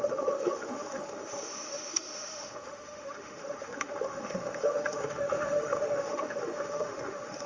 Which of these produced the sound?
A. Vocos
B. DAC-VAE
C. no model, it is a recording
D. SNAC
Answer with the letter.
B